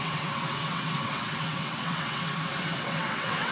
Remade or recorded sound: remade